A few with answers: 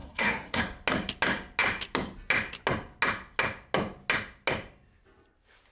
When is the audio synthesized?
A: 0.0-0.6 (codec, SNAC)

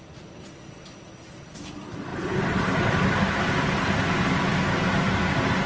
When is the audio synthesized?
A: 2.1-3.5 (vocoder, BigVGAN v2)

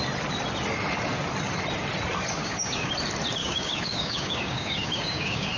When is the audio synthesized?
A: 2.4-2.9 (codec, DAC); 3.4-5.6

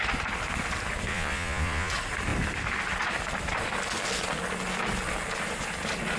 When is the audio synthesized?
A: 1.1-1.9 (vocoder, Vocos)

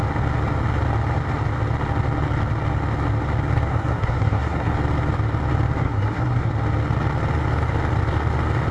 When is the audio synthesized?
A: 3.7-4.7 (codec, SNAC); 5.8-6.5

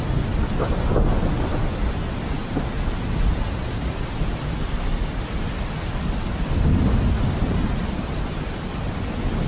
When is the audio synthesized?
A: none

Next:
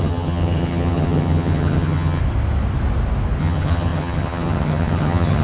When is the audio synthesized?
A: 0.0-2.2 (vocoder, HiFi-GAN); 3.4-5.4

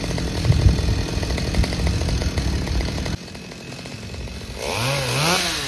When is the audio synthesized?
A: none